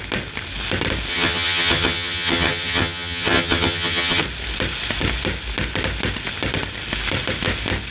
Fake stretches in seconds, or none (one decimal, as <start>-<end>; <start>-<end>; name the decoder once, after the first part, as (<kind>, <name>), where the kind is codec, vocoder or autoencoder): 1.1-4.2 (vocoder, HiFi-GAN)